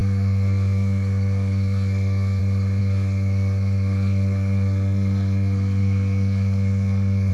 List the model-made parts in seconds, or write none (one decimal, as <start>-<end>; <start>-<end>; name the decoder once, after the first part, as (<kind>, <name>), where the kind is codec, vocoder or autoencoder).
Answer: 0.0-2.4 (codec, SNAC); 2.8-7.3